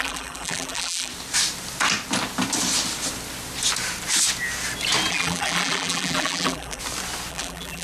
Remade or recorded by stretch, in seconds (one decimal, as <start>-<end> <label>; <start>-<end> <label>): 0.0-1.1 remade; 1.1-5.1 recorded; 5.1-6.8 remade; 6.8-7.3 recorded; 7.3-7.8 remade